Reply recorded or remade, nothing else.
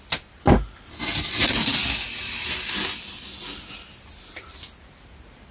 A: recorded